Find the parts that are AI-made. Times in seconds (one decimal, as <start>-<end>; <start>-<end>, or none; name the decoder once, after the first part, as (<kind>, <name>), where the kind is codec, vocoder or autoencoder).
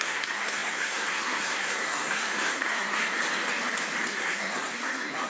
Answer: 0.0-3.2 (codec, SNAC); 4.1-5.3